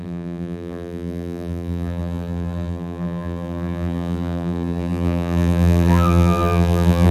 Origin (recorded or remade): remade